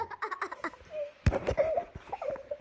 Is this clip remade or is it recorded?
recorded